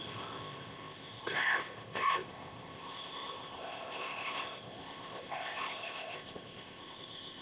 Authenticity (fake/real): fake